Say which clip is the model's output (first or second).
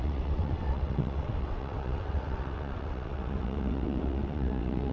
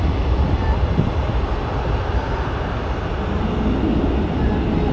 first